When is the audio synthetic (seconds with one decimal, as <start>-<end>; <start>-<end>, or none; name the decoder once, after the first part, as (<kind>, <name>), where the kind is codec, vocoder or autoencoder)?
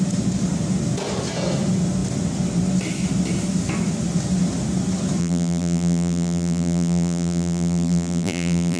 5.2-8.8 (vocoder, BigVGAN v2)